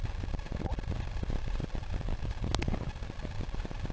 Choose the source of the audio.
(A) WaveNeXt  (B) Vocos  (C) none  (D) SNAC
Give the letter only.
C